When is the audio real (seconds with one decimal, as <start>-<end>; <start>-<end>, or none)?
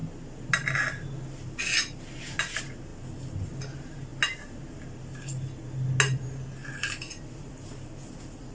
0.0-6.6